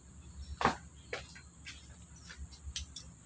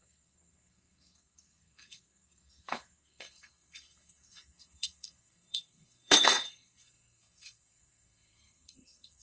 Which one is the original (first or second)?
first